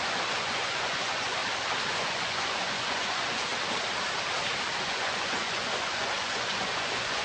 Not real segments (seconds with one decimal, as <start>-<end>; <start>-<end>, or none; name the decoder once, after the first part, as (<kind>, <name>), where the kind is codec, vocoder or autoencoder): 0.0-1.4 (vocoder, Vocos); 1.9-3.5; 4.8-7.2